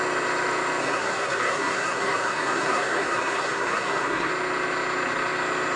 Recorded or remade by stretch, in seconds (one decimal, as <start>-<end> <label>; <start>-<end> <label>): 0.0-0.8 recorded; 0.8-4.3 remade; 4.3-5.8 recorded